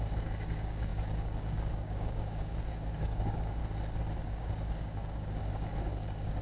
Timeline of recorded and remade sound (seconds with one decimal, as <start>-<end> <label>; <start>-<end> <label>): 0.0-3.6 remade; 3.6-4.2 recorded; 4.2-6.4 remade